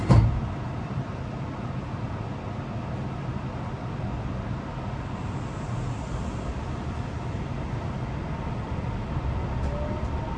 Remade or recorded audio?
recorded